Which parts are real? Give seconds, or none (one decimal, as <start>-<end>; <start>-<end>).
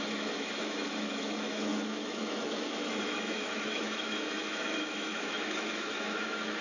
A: none